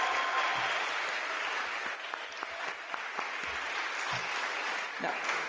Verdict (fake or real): real